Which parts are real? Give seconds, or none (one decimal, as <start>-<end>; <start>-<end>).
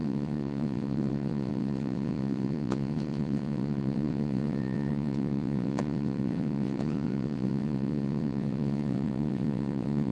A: none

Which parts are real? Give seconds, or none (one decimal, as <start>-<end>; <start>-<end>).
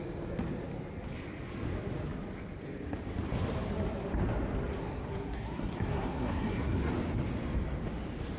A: 0.0-5.1; 6.9-8.4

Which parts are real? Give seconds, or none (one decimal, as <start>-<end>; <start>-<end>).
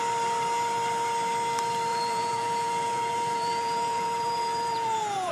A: 0.0-1.9